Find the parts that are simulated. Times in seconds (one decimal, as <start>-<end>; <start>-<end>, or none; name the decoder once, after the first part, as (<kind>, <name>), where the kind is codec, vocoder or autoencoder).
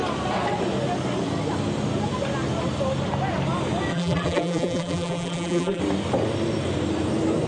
3.9-5.8 (vocoder, BigVGAN v2)